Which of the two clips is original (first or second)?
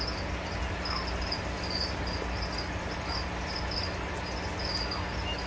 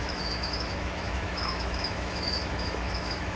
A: first